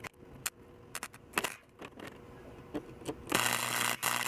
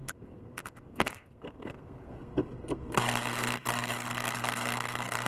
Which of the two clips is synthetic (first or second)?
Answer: second